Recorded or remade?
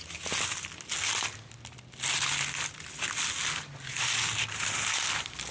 recorded